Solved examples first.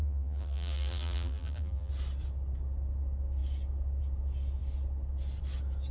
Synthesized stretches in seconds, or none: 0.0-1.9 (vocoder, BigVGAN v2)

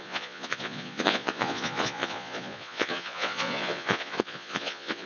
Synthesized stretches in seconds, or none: 0.0-5.1 (vocoder, Vocos)

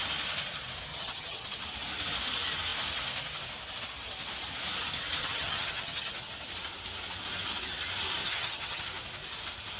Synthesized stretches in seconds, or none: 0.9-1.6 (vocoder, HiFi-GAN); 5.2-6.3; 8.2-8.8

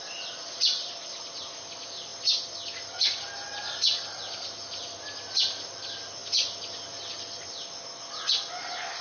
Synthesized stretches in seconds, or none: none

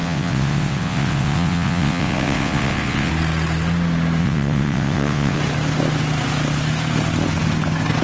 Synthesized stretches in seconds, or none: 0.0-3.1 (vocoder, WaveNeXt); 4.2-5.4